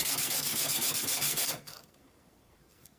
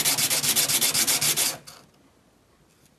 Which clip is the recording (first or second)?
second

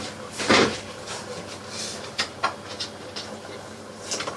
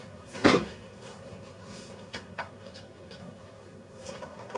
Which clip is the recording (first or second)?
first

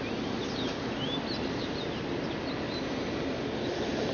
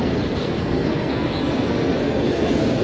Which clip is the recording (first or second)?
first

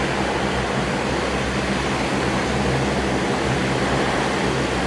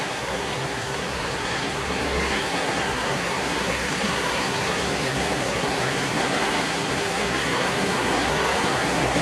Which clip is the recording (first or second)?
first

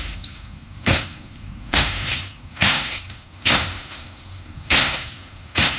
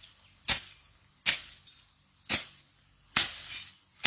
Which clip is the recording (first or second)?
second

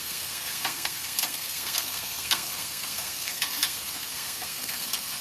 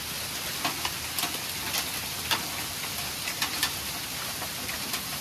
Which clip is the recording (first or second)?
second